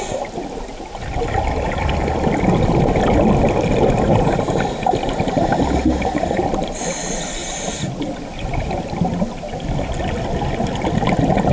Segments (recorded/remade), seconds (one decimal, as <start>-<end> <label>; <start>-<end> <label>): 0.0-11.5 recorded